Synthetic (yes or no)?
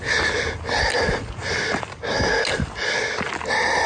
no